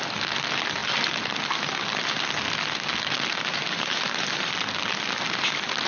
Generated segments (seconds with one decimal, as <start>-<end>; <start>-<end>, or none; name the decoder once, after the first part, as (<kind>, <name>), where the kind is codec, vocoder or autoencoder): 3.3-4.5 (vocoder, BigVGAN v2)

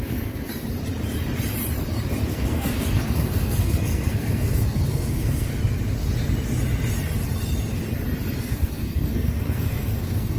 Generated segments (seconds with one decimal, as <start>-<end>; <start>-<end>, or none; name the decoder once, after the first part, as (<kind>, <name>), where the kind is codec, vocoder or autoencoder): 0.0-0.5 (codec, SNAC); 2.3-5.5; 8.4-10.4

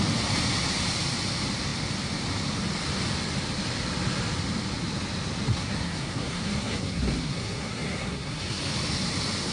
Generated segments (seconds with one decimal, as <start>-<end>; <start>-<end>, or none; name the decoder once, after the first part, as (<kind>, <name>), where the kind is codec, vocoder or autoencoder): 5.5-8.6 (codec, SNAC)

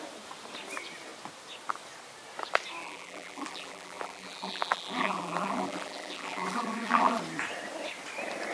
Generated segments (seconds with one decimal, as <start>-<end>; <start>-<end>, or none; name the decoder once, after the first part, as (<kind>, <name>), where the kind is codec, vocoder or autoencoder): 2.8-7.2 (vocoder, BigVGAN v2)